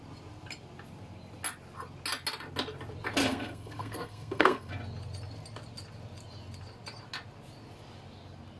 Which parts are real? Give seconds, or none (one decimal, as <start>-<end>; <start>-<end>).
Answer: 0.0-3.2; 4.7-8.6